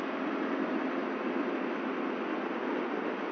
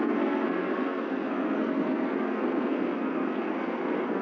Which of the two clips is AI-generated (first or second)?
second